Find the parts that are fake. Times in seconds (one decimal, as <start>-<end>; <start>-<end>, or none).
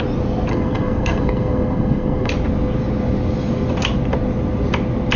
0.5-2.3